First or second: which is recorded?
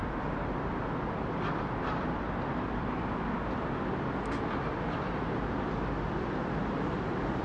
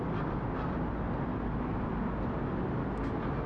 second